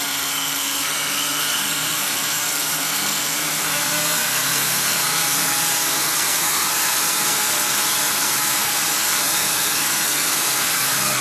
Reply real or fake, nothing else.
fake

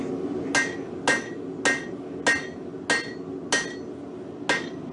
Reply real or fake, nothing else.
real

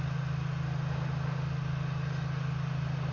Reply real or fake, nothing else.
real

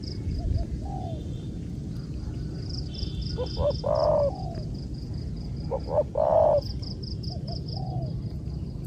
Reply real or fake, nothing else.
real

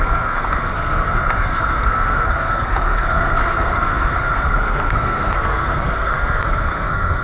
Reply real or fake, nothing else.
fake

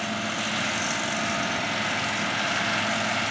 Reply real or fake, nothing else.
real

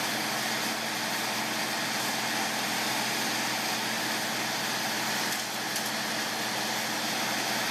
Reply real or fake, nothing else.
real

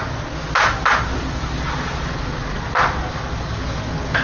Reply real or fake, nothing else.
real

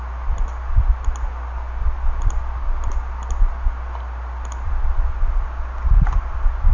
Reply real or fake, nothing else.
real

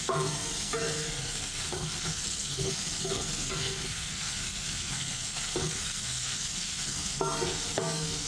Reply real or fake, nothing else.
fake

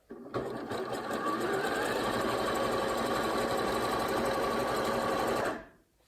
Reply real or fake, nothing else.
real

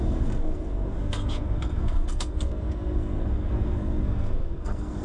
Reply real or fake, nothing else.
fake